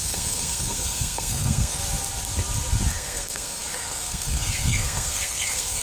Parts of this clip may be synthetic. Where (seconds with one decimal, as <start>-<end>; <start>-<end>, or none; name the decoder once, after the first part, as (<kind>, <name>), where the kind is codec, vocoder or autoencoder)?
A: 0.0-1.8 (codec, SNAC); 2.9-5.8

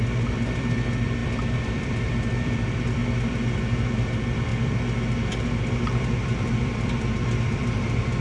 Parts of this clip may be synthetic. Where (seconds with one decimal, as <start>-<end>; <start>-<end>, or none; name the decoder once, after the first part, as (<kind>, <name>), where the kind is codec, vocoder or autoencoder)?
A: 0.0-3.0 (vocoder, BigVGAN v2); 3.9-8.2

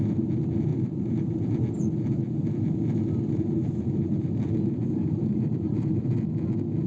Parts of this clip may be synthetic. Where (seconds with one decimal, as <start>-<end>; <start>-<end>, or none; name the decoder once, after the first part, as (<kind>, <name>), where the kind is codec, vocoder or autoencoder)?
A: 0.7-1.4 (vocoder, BigVGAN v2); 3.6-6.0

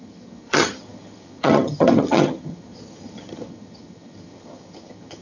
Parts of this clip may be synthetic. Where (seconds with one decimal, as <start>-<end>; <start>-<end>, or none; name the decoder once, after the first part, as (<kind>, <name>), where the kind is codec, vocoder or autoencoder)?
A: 0.0-5.2 (vocoder, HiFi-GAN)

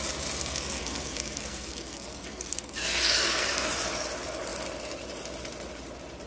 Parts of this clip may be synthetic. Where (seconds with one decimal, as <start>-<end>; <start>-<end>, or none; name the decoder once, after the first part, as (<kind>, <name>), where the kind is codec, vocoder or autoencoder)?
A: 0.4-3.7 (codec, SNAC)

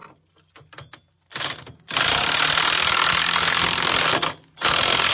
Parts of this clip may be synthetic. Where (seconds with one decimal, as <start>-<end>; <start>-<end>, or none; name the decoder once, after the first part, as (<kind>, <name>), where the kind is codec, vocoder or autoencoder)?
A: none

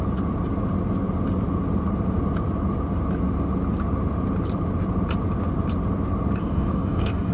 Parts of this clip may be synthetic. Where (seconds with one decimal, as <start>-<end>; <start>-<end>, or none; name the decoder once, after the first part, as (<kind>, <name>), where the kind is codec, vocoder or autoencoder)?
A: 6.4-7.3 (codec, DAC)